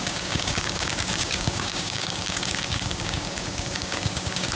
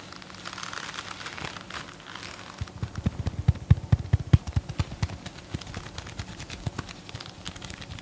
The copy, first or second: first